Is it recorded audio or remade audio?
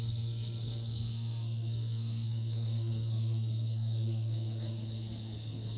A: remade